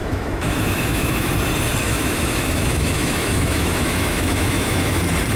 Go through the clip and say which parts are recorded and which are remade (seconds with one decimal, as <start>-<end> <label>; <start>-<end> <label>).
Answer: 0.0-1.3 remade; 1.3-1.8 recorded; 1.8-5.0 remade; 5.0-5.4 recorded